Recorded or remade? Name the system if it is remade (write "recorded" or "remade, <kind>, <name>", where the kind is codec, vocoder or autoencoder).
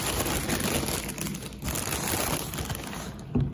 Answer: recorded